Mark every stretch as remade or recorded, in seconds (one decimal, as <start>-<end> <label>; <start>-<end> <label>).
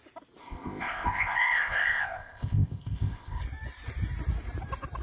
0.0-0.4 recorded; 0.4-3.4 remade; 3.4-5.0 recorded